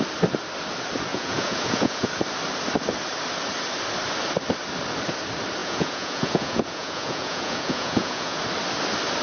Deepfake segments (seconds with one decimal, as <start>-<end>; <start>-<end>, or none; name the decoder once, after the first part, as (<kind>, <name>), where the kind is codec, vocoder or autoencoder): 1.1-2.1 (vocoder, Vocos); 5.6-8.4